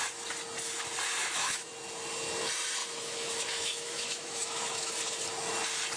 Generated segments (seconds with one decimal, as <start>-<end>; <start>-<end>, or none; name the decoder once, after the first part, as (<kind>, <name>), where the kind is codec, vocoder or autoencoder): 1.2-1.7 (autoencoder, DAC-VAE); 2.8-4.9